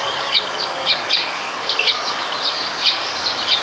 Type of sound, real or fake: fake